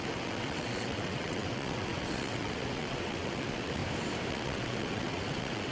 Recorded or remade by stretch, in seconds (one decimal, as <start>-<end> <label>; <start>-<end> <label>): 0.0-3.8 remade; 3.8-4.3 recorded; 4.3-5.7 remade